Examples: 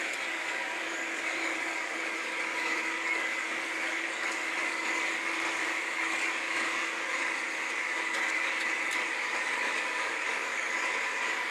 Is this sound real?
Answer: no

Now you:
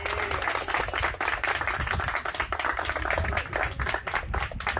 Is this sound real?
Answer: yes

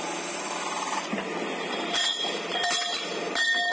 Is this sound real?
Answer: yes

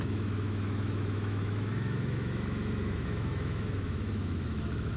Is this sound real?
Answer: no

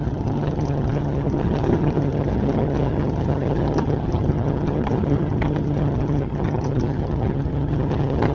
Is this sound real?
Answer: no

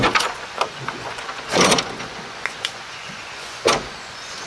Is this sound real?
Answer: no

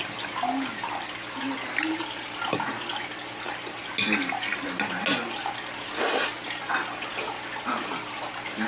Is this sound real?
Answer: yes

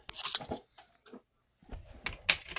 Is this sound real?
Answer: yes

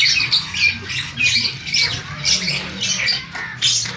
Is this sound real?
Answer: yes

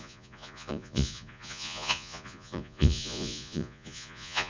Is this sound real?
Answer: no